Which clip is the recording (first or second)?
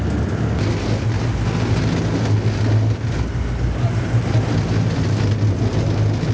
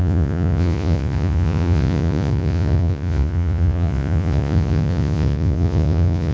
first